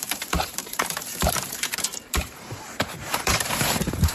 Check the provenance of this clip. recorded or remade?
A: remade